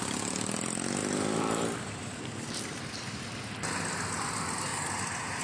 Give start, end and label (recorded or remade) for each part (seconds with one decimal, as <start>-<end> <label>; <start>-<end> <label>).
0.0-1.0 recorded; 1.0-2.8 remade; 2.8-5.4 recorded